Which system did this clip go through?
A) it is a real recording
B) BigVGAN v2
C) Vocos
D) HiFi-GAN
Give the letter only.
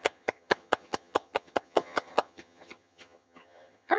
D